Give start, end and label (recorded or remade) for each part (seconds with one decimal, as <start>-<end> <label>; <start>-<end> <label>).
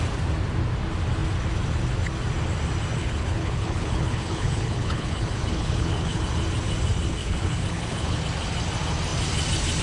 0.0-3.0 recorded; 3.0-6.2 remade; 6.2-7.2 recorded; 7.2-8.2 remade; 8.2-9.8 recorded